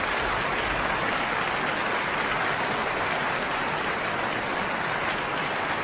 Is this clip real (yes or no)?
yes